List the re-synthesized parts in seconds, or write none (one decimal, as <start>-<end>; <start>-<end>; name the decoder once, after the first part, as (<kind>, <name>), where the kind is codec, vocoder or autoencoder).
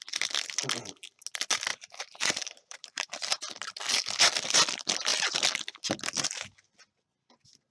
1.7-3.4 (vocoder, BigVGAN v2)